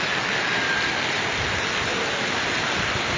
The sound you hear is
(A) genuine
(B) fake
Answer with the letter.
A